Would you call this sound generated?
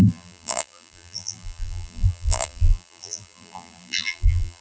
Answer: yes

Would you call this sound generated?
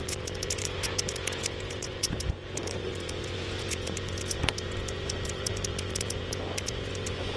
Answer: yes